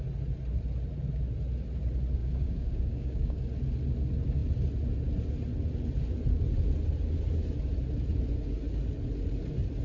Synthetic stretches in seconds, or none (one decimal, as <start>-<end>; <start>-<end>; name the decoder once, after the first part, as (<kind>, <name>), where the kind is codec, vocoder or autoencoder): 2.2-3.4 (codec, DAC)